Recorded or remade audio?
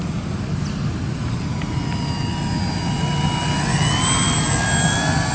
recorded